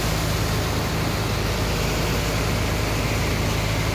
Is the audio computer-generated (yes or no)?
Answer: no